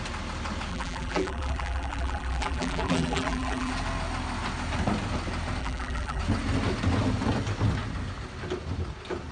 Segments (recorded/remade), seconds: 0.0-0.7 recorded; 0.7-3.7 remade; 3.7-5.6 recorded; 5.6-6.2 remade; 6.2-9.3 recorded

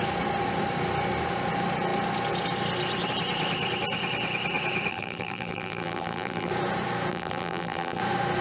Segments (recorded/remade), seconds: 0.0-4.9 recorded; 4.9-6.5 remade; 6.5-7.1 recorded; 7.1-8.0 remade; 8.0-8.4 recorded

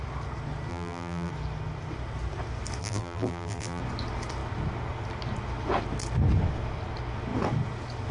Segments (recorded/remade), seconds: 0.0-0.7 recorded; 0.7-1.3 remade; 1.3-2.8 recorded; 2.8-3.8 remade; 3.8-8.1 recorded